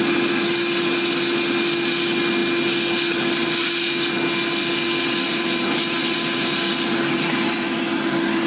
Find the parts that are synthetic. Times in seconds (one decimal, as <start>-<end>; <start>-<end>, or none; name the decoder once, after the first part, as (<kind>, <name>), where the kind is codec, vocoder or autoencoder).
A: none